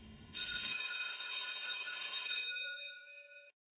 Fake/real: fake